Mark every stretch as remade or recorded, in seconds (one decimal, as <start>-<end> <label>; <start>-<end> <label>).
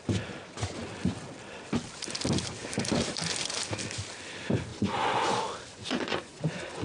0.0-4.7 recorded; 4.7-5.3 remade; 5.3-5.7 recorded; 5.7-6.8 remade